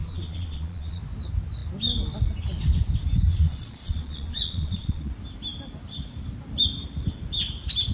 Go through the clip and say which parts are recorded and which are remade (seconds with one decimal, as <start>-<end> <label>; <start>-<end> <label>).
0.0-1.0 remade; 1.0-3.3 recorded; 3.3-5.1 remade; 5.1-7.9 recorded